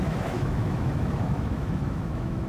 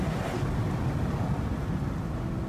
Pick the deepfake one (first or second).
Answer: first